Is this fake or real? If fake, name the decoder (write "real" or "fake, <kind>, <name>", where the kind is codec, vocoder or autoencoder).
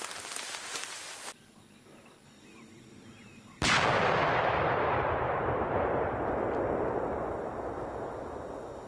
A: real